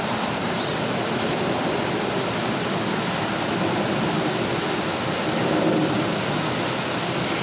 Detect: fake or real real